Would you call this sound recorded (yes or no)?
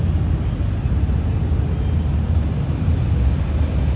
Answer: yes